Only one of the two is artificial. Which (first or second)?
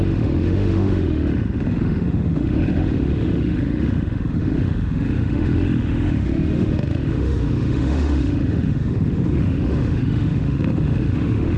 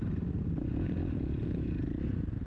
first